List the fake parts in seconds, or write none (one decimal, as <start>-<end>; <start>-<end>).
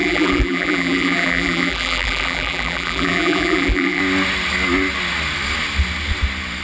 0.0-4.0